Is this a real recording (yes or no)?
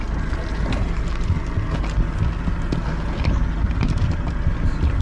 yes